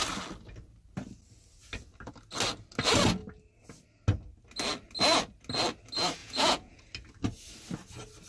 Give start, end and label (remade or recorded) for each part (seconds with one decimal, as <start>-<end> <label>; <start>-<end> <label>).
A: 0.0-6.2 recorded; 6.2-6.8 remade; 6.8-8.3 recorded